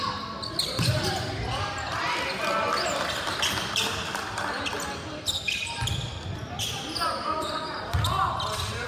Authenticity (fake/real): real